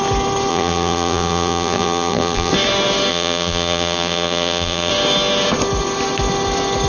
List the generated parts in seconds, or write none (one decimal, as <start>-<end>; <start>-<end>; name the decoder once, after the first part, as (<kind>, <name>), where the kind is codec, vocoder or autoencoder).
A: 0.5-2.5 (vocoder, BigVGAN v2); 3.1-4.9